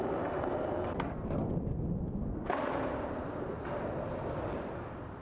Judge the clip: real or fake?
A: fake